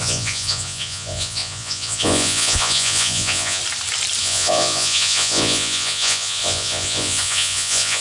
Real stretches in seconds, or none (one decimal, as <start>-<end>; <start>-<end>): 3.6-4.2